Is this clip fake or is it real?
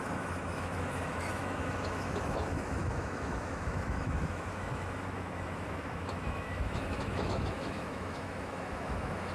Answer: fake